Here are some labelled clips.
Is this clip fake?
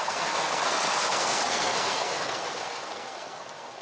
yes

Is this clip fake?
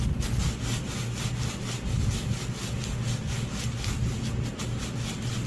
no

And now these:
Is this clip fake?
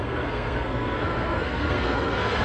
yes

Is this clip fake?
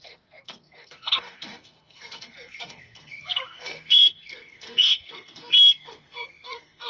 yes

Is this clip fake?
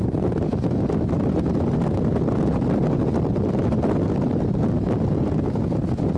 no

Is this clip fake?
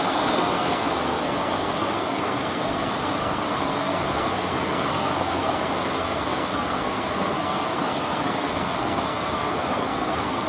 yes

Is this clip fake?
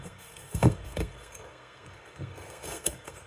yes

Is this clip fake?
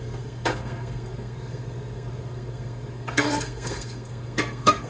yes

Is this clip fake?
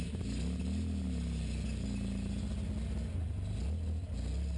no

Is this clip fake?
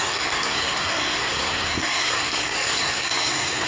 yes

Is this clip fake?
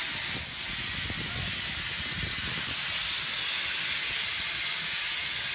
no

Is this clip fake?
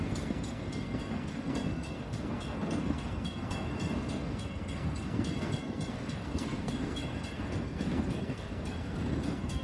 yes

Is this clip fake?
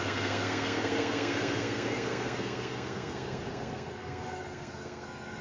yes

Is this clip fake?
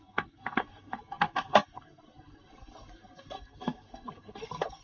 yes